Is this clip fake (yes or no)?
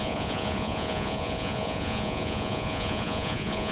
yes